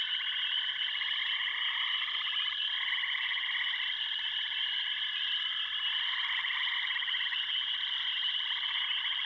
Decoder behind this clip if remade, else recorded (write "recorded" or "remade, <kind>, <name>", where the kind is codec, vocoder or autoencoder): recorded